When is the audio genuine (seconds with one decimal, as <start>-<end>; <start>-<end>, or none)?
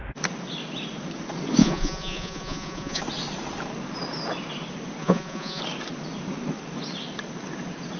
0.0-1.6; 3.0-5.0; 5.6-8.0